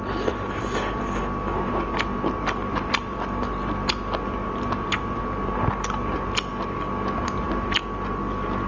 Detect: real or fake real